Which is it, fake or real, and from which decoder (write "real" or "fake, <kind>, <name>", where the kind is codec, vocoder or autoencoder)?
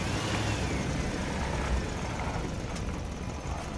real